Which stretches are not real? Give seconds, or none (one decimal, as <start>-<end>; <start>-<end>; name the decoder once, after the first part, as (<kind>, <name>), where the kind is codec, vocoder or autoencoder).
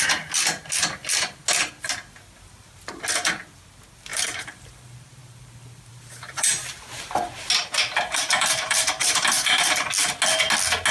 4.1-6.5 (vocoder, BigVGAN v2); 7.6-9.9